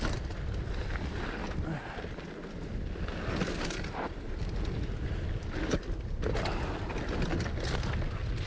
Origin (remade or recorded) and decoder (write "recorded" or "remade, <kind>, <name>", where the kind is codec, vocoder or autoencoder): recorded